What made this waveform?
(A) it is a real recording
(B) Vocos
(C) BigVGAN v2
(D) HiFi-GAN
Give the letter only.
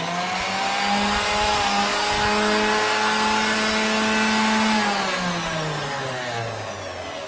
A